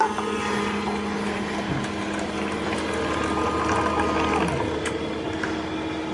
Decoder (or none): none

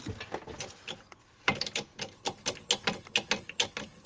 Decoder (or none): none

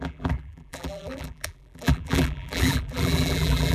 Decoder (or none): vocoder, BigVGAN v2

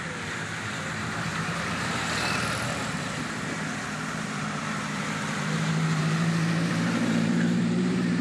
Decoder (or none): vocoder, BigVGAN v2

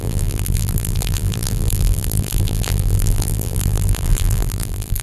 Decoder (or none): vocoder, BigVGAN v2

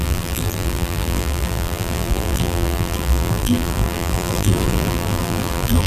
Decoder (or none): vocoder, BigVGAN v2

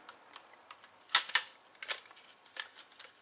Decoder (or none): none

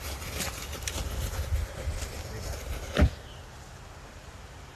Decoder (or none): vocoder, BigVGAN v2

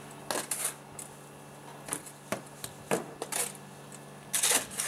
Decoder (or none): none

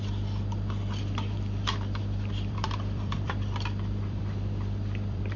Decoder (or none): vocoder, BigVGAN v2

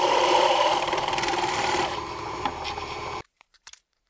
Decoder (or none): vocoder, BigVGAN v2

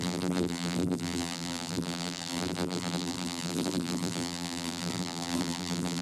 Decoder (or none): vocoder, BigVGAN v2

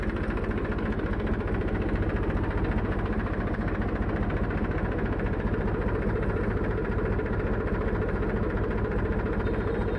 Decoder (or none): none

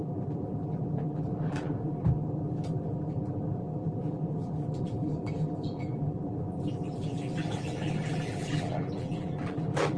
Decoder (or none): vocoder, BigVGAN v2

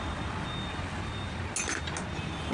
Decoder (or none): none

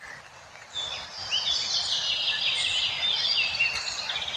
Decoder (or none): none